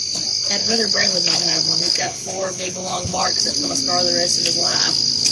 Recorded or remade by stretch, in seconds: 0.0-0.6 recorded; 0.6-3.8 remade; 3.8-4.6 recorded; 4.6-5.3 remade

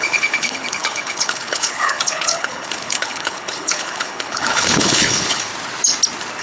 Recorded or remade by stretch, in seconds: 0.0-5.5 remade; 5.5-6.4 recorded

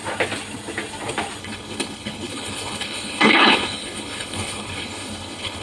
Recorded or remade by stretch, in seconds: 0.0-1.4 recorded; 1.4-5.6 remade

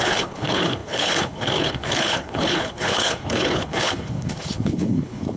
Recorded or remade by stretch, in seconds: 0.0-5.4 remade

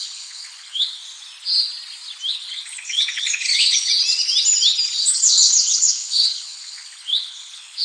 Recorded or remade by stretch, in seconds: 0.0-1.0 remade; 1.0-2.3 recorded; 2.3-3.9 remade; 3.9-5.0 recorded; 5.0-7.8 remade

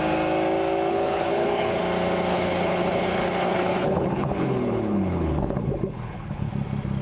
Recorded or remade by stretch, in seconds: 0.0-0.9 recorded; 0.9-1.8 remade; 1.8-2.3 recorded; 2.3-6.5 remade; 6.5-7.0 recorded

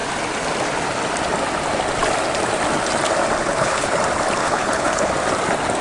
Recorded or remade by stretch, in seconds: 0.0-3.4 recorded; 3.4-4.0 remade; 4.0-4.4 recorded; 4.4-5.1 remade; 5.1-5.8 recorded